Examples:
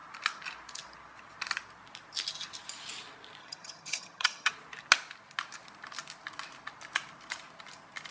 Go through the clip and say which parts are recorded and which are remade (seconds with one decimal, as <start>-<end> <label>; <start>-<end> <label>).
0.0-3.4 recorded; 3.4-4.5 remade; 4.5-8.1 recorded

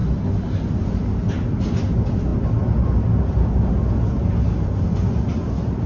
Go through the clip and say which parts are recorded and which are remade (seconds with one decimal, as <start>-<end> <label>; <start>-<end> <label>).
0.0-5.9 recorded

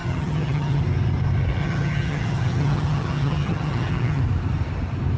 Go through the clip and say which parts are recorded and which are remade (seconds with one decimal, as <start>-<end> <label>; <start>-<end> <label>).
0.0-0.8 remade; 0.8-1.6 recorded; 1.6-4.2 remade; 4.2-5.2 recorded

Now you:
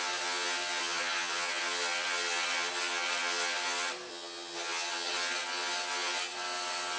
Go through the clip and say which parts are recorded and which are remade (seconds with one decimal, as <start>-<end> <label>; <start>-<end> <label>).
0.0-0.8 recorded; 0.8-1.6 remade; 1.6-4.1 recorded; 4.1-5.1 remade; 5.1-7.0 recorded

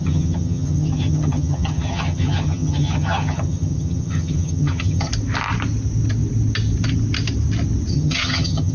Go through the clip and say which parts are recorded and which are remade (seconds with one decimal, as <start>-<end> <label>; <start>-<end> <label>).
0.0-5.1 remade; 5.1-7.9 recorded; 7.9-8.7 remade

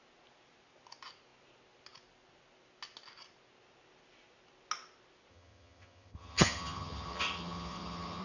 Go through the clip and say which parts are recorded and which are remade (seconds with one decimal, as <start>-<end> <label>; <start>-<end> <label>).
0.0-5.3 recorded; 5.3-8.2 remade

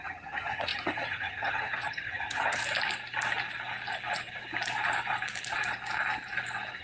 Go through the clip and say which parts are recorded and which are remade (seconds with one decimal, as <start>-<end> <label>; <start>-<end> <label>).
0.0-2.6 remade; 2.6-6.8 recorded

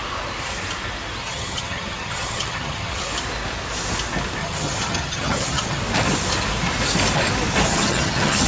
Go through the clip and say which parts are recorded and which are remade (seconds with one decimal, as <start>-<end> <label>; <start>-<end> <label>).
0.0-1.2 recorded; 1.2-3.1 remade; 3.1-4.4 recorded; 4.4-5.8 remade; 5.8-7.7 recorded; 7.7-8.5 remade